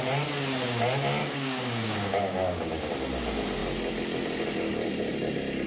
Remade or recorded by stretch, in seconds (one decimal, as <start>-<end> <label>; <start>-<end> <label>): 0.0-1.2 recorded; 1.2-2.9 remade; 2.9-5.7 recorded